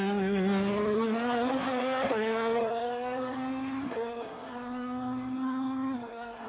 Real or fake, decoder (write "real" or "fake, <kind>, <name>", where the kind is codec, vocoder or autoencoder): fake, codec, SNAC